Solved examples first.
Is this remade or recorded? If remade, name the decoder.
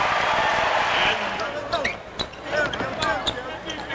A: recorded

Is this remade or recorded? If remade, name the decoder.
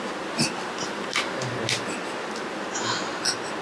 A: recorded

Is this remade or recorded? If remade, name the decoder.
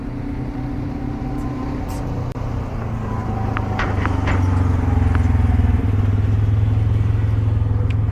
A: recorded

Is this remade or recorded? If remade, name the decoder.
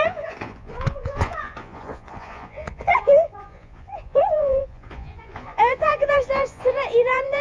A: remade, vocoder, Vocos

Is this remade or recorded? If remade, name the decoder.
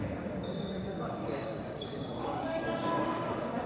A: remade, codec, DAC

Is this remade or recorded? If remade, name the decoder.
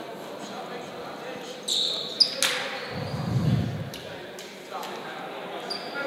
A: recorded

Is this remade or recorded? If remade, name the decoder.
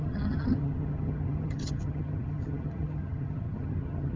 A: remade, vocoder, HiFi-GAN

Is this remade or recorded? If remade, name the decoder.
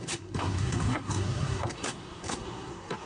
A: remade, codec, SNAC